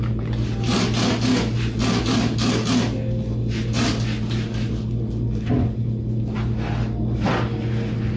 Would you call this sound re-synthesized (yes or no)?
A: no